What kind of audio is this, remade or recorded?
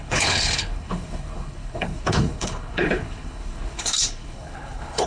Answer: remade